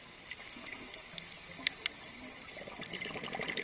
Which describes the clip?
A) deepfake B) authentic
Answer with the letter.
B